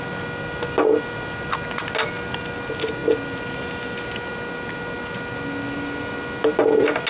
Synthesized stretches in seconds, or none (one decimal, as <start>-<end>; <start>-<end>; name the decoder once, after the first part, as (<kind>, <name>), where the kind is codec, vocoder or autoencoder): none